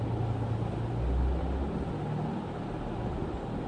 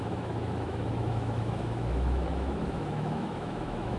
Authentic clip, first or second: first